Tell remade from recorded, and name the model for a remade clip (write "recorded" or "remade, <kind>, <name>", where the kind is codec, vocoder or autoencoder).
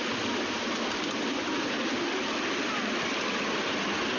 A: recorded